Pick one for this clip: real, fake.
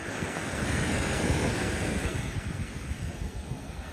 fake